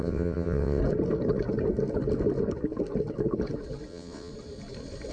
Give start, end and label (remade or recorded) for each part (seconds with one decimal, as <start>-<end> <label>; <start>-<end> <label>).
0.0-0.8 remade; 0.8-3.9 recorded; 3.9-4.3 remade; 4.3-5.1 recorded